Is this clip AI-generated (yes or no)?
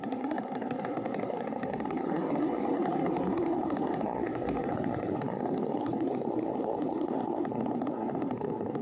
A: yes